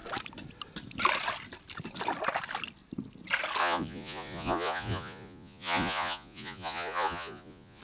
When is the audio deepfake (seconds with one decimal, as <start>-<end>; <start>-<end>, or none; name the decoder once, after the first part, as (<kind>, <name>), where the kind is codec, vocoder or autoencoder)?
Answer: 3.6-7.8 (vocoder, Vocos)